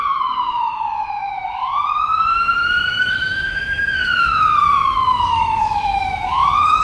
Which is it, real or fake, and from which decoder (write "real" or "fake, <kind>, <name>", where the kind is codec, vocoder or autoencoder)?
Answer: fake, autoencoder, DAC-VAE